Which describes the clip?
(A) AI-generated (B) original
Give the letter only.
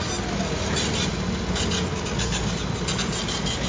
B